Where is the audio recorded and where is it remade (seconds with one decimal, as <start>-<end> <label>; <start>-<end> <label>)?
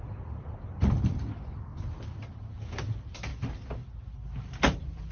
0.0-5.1 recorded